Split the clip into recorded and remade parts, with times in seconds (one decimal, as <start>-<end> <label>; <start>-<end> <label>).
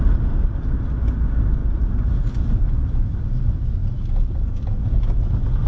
0.0-1.6 recorded; 1.6-2.6 remade; 2.6-5.7 recorded